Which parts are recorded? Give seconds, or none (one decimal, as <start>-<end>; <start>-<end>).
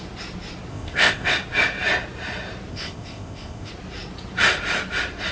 0.0-0.7; 1.3-2.7; 3.7-5.3